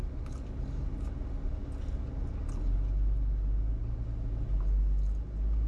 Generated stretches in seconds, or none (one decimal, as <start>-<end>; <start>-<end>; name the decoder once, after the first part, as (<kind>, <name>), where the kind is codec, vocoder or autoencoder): none